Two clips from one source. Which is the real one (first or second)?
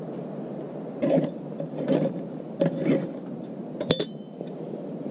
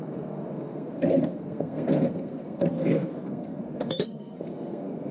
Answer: first